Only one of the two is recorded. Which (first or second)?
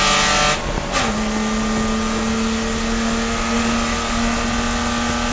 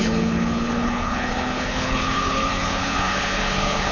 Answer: first